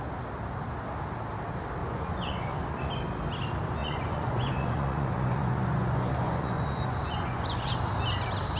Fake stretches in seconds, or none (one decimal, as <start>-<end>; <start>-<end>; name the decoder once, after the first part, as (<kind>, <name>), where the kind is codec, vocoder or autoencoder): 1.8-2.9 (vocoder, Vocos); 3.8-7.7

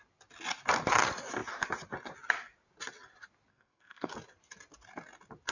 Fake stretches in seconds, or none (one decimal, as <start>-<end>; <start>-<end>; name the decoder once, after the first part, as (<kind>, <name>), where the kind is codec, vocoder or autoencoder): 3.5-4.1 (codec, SNAC)

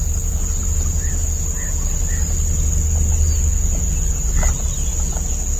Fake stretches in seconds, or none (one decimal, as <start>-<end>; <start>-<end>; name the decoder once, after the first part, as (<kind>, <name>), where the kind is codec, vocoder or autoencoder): none

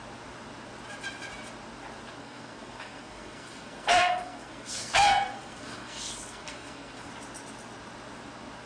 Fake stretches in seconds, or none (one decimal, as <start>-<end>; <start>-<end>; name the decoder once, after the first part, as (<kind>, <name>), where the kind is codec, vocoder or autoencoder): 2.2-7.1 (codec, SNAC)

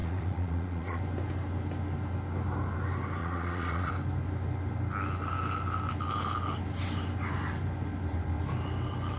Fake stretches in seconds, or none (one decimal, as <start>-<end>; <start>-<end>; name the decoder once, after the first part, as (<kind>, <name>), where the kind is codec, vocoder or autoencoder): 0.0-1.0 (vocoder, Vocos); 3.2-3.9

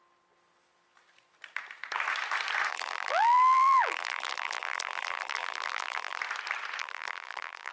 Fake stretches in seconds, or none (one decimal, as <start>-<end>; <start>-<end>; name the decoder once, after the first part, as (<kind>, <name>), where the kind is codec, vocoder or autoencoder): 2.7-6.2 (vocoder, BigVGAN v2); 6.8-7.7

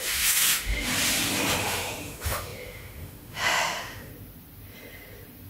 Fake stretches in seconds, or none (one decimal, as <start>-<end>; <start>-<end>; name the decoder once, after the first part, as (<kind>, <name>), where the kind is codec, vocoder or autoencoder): 0.0-0.9 (autoencoder, DAC-VAE); 1.6-4.1